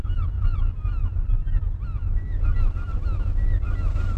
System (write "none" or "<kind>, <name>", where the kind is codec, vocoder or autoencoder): none